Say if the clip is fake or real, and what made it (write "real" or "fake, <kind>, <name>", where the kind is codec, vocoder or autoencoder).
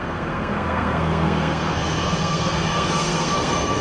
fake, codec, SNAC